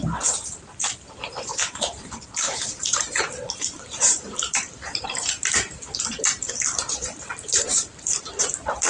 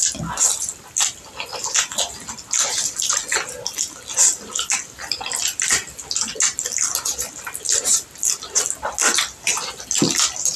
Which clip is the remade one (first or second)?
first